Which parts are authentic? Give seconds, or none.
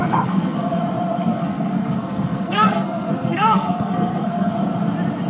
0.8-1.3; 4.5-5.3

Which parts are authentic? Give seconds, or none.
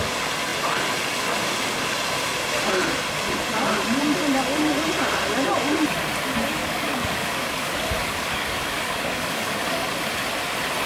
0.0-6.6; 10.0-10.9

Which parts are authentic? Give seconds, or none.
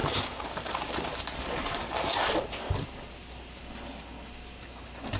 0.7-1.6; 3.6-5.2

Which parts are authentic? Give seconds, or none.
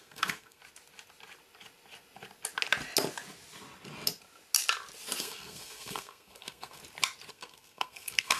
0.6-5.2; 6.8-7.3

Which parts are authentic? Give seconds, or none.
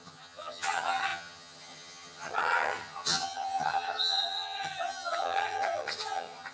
none